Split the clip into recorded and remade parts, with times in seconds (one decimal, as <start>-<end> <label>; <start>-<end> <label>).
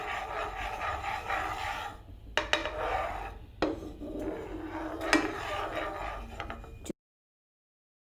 0.0-8.1 recorded